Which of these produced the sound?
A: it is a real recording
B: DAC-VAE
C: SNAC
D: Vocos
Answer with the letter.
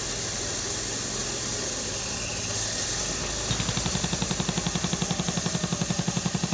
A